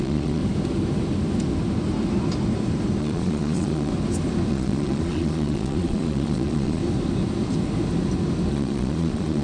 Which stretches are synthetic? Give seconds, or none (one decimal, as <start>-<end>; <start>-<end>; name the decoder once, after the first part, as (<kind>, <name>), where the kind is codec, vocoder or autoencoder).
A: 0.0-0.4 (vocoder, Vocos); 3.0-3.9; 4.5-6.8; 8.5-9.4

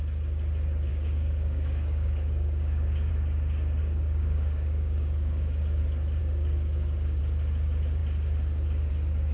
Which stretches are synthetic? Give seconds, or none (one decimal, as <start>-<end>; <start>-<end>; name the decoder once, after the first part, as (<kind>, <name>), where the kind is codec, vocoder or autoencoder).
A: 0.9-3.1 (codec, DAC); 3.8-5.8; 6.2-7.2

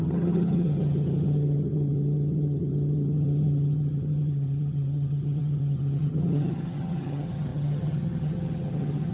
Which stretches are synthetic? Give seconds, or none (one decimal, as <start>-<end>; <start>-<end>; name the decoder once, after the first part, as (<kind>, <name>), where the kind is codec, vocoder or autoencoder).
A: 0.0-9.1 (vocoder, HiFi-GAN)

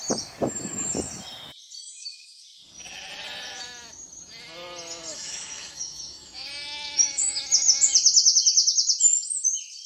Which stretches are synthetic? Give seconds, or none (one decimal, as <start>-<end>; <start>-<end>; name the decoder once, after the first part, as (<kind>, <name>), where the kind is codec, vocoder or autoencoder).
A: 1.8-2.4 (autoencoder, DAC-VAE); 5.1-7.4

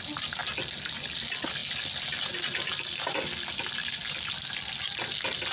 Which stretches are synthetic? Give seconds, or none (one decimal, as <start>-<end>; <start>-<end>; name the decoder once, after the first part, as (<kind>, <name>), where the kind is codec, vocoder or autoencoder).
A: none